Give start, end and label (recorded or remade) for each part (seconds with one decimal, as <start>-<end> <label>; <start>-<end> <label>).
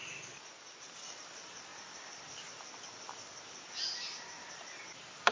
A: 0.0-5.3 recorded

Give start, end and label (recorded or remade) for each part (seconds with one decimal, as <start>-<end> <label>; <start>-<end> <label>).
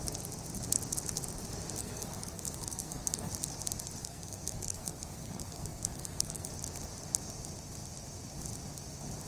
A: 0.0-1.8 recorded; 1.8-3.3 remade; 3.3-4.0 recorded; 4.0-6.5 remade; 6.5-9.3 recorded